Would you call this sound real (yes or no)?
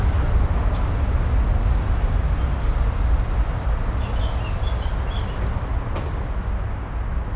yes